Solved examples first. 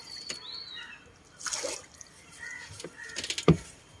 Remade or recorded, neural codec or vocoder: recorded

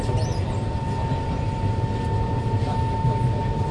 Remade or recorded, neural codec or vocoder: recorded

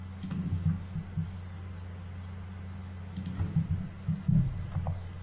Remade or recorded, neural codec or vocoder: recorded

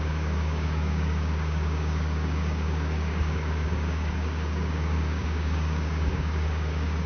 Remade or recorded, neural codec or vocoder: remade, codec, DAC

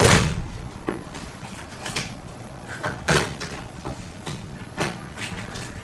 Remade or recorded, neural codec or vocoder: remade, vocoder, Vocos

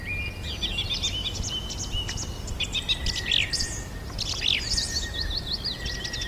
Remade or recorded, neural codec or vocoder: recorded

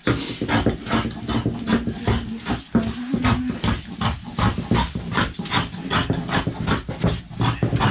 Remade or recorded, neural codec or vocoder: recorded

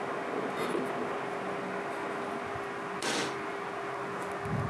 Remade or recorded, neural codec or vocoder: recorded